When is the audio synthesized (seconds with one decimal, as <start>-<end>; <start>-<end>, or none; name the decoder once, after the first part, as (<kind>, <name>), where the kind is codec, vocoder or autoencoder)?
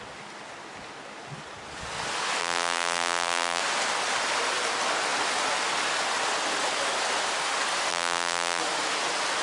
2.4-3.6 (vocoder, BigVGAN v2); 7.9-8.6